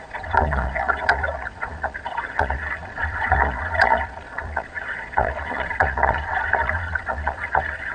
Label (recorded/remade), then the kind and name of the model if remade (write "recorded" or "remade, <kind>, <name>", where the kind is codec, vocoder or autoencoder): remade, vocoder, Vocos